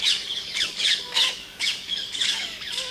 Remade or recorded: remade